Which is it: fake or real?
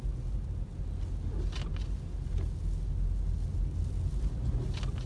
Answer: real